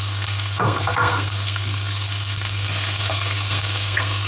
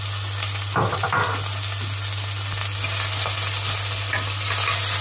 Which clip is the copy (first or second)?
first